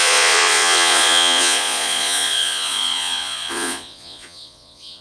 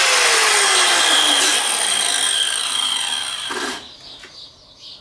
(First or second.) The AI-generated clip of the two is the first